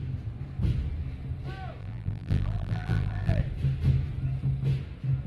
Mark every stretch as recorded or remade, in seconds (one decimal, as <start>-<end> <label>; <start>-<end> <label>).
0.0-1.8 recorded; 1.8-3.4 remade; 3.4-5.3 recorded